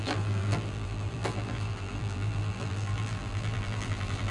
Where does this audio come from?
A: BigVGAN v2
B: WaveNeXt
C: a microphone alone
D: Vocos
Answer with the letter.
A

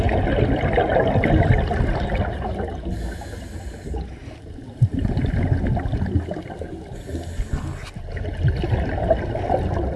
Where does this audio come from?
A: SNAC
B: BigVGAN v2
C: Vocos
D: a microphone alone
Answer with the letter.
D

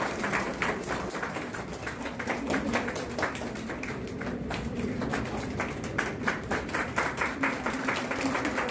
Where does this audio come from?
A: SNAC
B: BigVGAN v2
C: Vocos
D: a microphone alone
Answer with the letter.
B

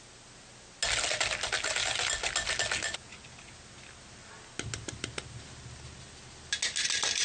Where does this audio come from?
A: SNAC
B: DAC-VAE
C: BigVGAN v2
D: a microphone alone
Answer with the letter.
D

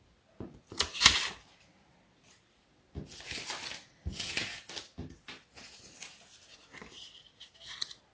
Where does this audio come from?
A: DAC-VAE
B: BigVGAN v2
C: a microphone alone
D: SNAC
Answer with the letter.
C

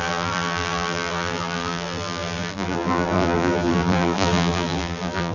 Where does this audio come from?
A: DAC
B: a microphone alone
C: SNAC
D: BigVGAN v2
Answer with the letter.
D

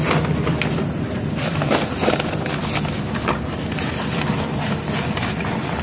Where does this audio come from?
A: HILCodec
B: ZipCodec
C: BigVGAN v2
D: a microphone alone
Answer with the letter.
D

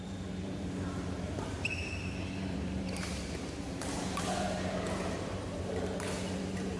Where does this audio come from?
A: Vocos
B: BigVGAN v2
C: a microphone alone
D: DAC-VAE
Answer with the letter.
B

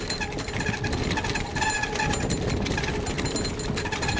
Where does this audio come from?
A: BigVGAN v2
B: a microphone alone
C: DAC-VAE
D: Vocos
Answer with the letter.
B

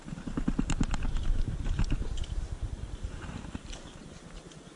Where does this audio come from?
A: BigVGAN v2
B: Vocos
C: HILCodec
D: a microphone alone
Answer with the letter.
A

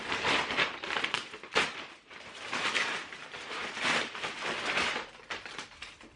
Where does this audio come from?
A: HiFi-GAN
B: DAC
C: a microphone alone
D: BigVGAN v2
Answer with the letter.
D